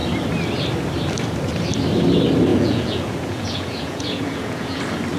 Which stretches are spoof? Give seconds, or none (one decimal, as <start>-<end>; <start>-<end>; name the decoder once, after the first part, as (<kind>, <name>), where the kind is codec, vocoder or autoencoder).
2.5-4.8 (vocoder, Vocos)

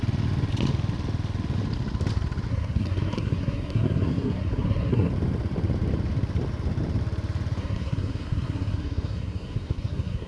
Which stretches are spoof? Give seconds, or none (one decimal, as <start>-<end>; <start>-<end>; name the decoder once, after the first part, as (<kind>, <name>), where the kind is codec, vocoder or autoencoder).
2.5-5.1 (codec, SNAC); 7.6-10.3

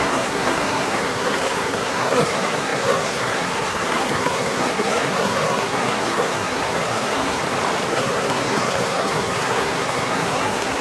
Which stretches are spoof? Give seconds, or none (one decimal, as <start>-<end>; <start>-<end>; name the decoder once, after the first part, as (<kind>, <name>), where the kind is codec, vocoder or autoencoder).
0.0-7.4 (codec, SNAC); 7.9-10.8

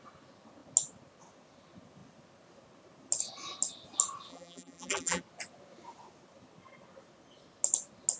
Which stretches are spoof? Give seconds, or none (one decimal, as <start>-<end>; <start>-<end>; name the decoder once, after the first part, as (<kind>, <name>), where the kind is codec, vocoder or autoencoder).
4.3-5.2 (vocoder, BigVGAN v2)